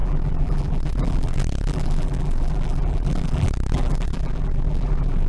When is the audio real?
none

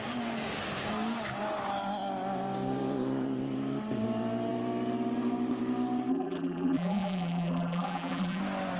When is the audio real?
0.0-6.1; 8.4-8.8

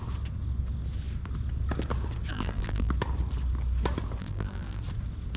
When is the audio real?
0.0-2.3; 2.9-4.2; 4.8-5.4